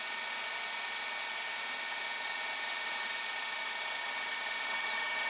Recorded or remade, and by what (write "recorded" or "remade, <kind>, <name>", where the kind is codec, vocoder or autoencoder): recorded